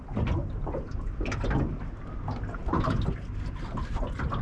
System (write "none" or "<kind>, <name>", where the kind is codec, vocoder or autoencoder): none